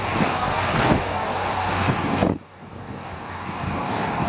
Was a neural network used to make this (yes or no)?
yes